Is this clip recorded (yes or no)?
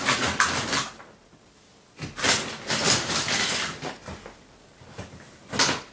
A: yes